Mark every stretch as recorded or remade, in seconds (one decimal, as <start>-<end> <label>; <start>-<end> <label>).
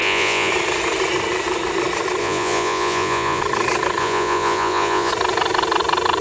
0.0-0.5 remade; 0.5-2.2 recorded; 2.2-3.4 remade; 3.4-4.0 recorded; 4.0-5.1 remade; 5.1-6.2 recorded